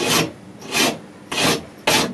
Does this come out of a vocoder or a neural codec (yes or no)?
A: no